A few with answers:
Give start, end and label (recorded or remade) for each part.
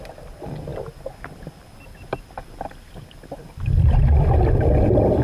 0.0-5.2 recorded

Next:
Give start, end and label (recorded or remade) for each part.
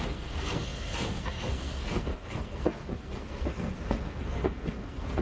0.0-5.2 remade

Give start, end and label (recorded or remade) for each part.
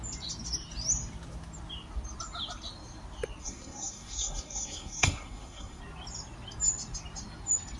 0.0-3.4 recorded; 3.4-5.8 remade; 5.8-7.8 recorded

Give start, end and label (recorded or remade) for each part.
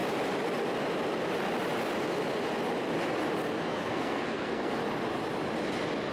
0.0-3.7 recorded; 3.7-4.8 remade; 4.8-6.1 recorded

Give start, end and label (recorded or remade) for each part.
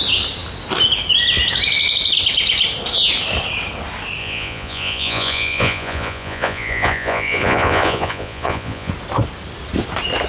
0.0-4.2 recorded; 4.2-8.9 remade; 8.9-10.3 recorded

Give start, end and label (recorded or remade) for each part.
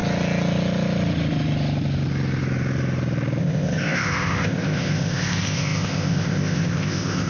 0.0-3.4 recorded; 3.4-7.3 remade